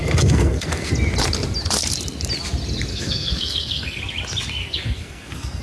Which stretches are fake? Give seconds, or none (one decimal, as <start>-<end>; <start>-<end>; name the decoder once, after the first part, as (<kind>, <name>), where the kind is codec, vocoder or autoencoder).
0.0-0.9 (codec, SNAC); 2.9-4.0; 4.6-5.6